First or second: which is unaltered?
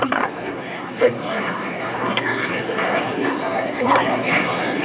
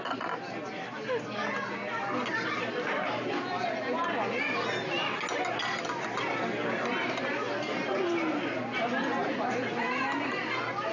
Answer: second